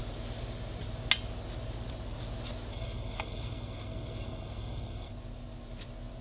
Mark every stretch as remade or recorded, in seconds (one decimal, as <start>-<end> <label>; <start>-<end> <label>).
0.0-2.7 recorded; 2.7-5.1 remade; 5.1-6.2 recorded

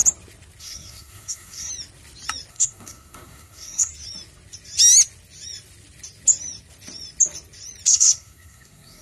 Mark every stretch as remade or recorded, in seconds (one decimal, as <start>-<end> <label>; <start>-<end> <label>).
0.0-0.6 recorded; 0.6-1.7 remade; 1.7-2.5 recorded; 2.5-3.9 remade; 3.9-7.9 recorded; 7.9-9.0 remade